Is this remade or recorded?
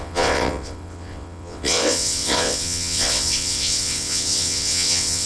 remade